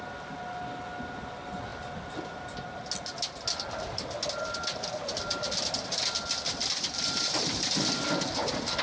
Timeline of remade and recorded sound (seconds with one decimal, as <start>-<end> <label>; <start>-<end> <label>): 0.0-8.8 recorded